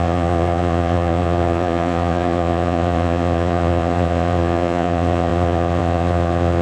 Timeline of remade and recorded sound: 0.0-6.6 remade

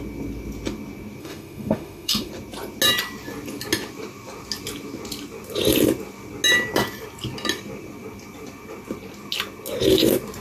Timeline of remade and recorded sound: 0.0-1.2 recorded; 1.2-2.3 remade; 2.3-10.4 recorded

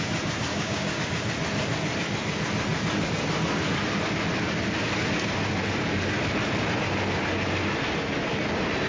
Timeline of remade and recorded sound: 0.0-0.5 recorded; 0.5-1.0 remade; 1.0-8.9 recorded

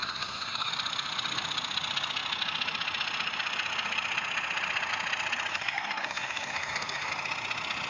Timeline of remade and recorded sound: 0.0-0.7 remade; 0.7-5.5 recorded; 5.5-7.1 remade; 7.1-7.9 recorded

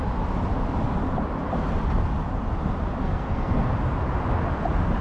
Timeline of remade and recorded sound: 0.0-3.0 recorded; 3.0-3.7 remade; 3.7-5.0 recorded

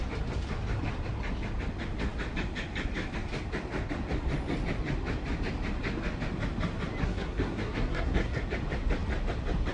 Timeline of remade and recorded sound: 0.0-7.0 recorded; 7.0-8.4 remade; 8.4-9.7 recorded

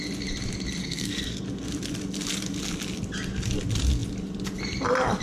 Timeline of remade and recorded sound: 0.0-0.8 recorded; 0.8-1.4 remade; 1.4-5.2 recorded